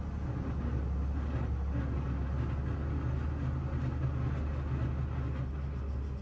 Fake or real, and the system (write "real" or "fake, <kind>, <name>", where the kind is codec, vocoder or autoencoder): real